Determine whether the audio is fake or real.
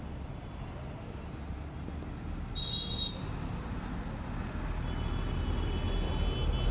real